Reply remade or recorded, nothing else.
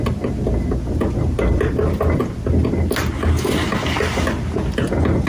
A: recorded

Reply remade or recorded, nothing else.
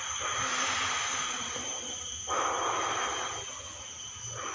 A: recorded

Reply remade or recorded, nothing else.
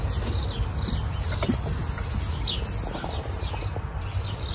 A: recorded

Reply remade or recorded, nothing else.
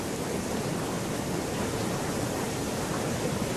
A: recorded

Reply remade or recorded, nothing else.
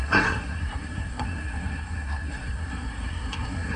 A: remade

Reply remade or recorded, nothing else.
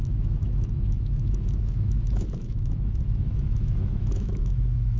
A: remade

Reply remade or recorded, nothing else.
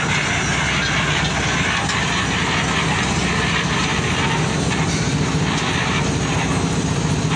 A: recorded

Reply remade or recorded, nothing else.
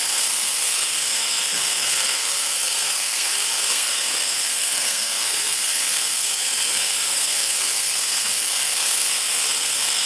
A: remade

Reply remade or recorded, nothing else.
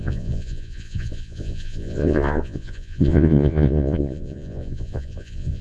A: remade